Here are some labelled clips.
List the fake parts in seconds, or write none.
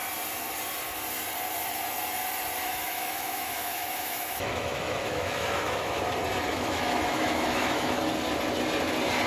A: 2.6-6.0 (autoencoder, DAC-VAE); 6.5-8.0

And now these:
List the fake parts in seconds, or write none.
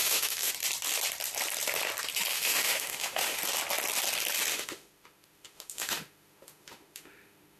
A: 0.0-0.5 (autoencoder, DAC-VAE); 2.3-3.4; 4.5-7.6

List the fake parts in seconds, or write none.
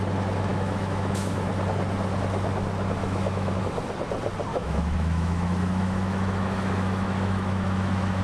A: 0.5-1.5 (autoencoder, DAC-VAE); 3.0-3.6; 4.5-8.2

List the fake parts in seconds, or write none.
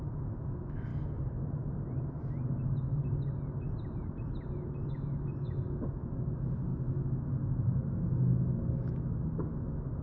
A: 0.0-0.9 (autoencoder, DAC-VAE); 4.9-10.0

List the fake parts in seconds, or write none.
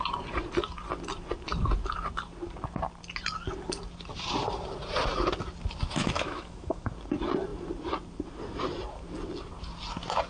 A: 6.0-6.9 (autoencoder, DAC-VAE)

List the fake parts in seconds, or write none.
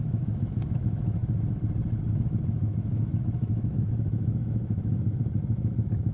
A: 0.0-1.2 (autoencoder, DAC-VAE); 2.1-6.1